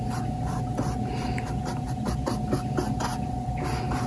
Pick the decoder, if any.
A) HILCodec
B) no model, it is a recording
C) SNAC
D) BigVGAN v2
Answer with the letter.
B